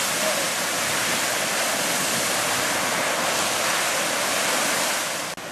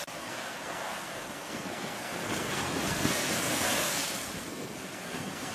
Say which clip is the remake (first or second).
second